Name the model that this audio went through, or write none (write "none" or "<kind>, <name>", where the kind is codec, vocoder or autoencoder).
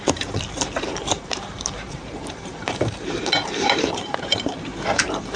vocoder, BigVGAN v2